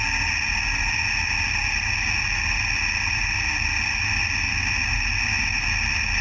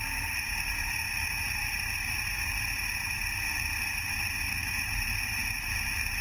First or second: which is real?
first